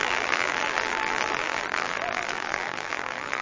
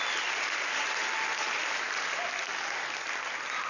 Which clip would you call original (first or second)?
second